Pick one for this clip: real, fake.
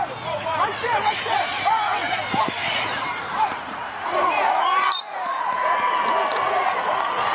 fake